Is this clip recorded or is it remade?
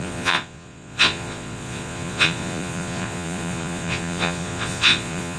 remade